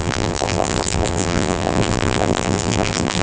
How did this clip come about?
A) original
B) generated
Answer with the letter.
B